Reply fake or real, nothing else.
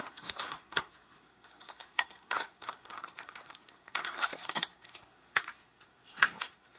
fake